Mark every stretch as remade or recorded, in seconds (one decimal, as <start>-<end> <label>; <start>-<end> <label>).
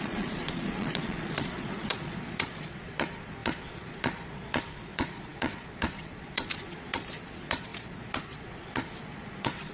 0.0-9.7 remade